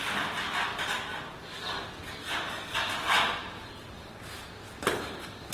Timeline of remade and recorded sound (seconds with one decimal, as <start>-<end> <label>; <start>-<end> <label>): 0.0-1.1 recorded; 1.1-4.1 remade; 4.1-5.5 recorded